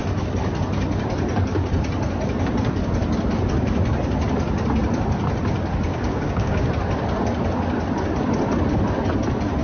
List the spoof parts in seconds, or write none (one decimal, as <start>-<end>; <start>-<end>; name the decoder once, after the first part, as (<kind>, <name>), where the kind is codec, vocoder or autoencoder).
5.9-6.7 (codec, DAC)